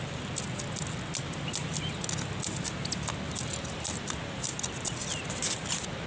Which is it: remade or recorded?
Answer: recorded